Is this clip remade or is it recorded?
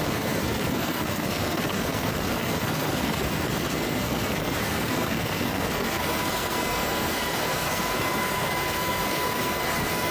remade